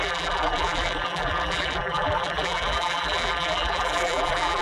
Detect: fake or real fake